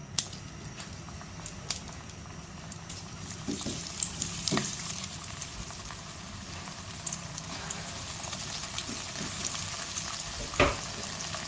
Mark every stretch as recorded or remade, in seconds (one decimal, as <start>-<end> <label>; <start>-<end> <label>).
0.0-3.3 recorded; 3.3-8.8 remade; 8.8-11.5 recorded